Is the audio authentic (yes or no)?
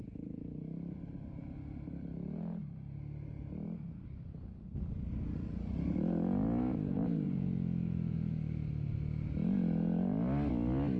yes